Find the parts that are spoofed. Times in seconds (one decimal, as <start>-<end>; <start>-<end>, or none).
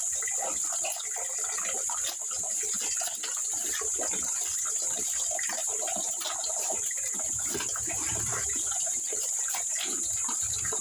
5.6-9.3